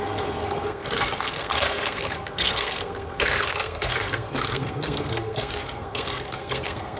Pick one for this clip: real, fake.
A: fake